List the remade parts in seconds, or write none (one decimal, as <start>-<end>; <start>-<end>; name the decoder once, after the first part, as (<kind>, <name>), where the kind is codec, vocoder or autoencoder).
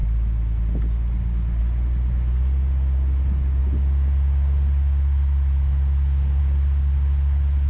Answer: none